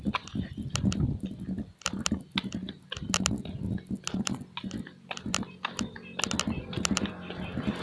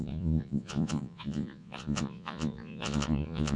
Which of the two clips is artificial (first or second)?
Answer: second